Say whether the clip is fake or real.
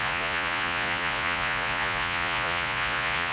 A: fake